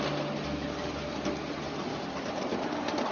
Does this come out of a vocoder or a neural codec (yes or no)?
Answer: no